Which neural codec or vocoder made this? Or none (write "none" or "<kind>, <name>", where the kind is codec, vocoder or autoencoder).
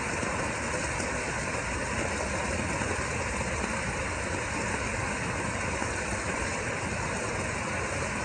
none